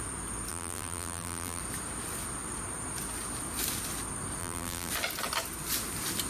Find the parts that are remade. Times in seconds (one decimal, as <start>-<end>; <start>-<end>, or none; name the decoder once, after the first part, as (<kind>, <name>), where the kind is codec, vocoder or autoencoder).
0.5-1.6 (vocoder, BigVGAN v2); 4.4-4.9